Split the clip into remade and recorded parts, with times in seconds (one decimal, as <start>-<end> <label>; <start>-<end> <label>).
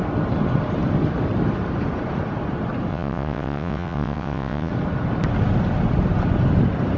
0.0-2.9 recorded; 2.9-4.7 remade; 4.7-7.0 recorded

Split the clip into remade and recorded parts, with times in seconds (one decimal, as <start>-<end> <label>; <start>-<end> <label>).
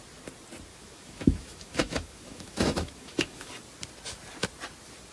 0.0-0.7 recorded; 0.7-3.5 remade; 3.5-5.1 recorded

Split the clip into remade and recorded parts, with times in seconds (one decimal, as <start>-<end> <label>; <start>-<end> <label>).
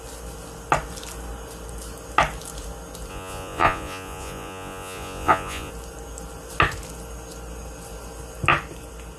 0.0-3.1 recorded; 3.1-5.7 remade; 5.7-9.2 recorded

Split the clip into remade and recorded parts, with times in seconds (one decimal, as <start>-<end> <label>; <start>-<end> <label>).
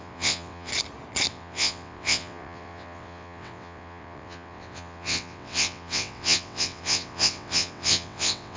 0.0-0.7 remade; 0.7-1.3 recorded; 1.3-8.6 remade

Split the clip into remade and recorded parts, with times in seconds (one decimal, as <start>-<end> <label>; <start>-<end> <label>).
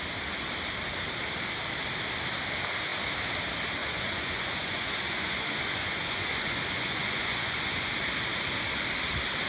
0.0-3.8 recorded; 3.8-7.9 remade; 7.9-9.5 recorded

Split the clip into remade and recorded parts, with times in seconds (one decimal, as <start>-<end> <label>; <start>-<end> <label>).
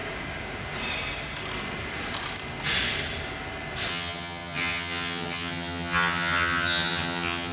0.0-3.9 recorded; 3.9-7.5 remade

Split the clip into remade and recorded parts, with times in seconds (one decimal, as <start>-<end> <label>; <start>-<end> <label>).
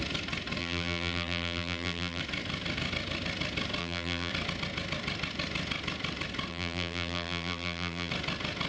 0.0-0.6 recorded; 0.6-2.2 remade; 2.2-3.8 recorded; 3.8-4.3 remade; 4.3-6.5 recorded; 6.5-8.1 remade; 8.1-8.7 recorded